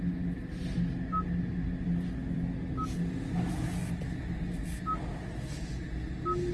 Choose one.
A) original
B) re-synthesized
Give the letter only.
A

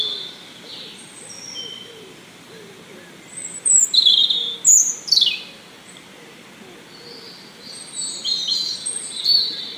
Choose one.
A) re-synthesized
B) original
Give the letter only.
B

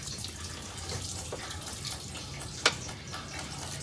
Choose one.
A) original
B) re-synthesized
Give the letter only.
A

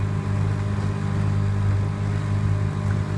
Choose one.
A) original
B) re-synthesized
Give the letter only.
A